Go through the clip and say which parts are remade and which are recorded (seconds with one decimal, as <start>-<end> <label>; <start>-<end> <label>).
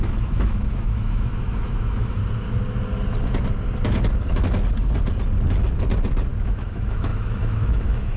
0.0-2.2 remade; 2.2-6.4 recorded; 6.4-8.2 remade